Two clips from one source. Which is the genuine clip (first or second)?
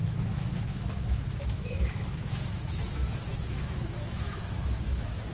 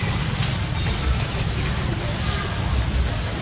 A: second